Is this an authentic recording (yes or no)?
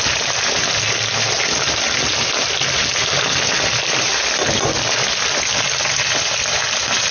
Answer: yes